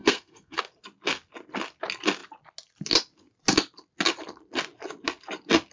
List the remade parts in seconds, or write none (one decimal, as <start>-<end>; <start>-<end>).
0.0-0.6

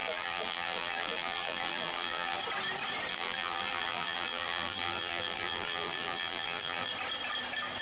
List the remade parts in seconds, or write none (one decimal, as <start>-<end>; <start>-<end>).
0.0-2.4; 3.1-6.9

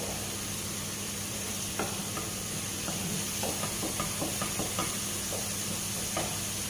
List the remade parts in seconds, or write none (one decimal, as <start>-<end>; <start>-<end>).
0.0-4.8

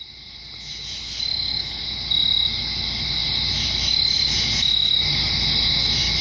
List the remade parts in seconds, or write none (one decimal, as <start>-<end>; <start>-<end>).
1.3-1.8